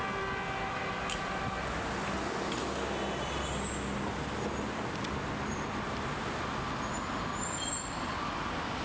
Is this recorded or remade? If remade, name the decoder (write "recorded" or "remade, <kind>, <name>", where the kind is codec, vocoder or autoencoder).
recorded